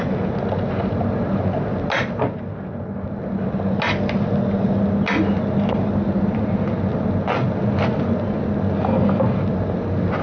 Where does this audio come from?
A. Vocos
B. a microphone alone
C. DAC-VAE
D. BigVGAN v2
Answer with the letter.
B